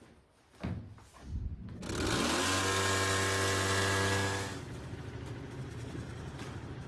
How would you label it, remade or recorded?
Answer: recorded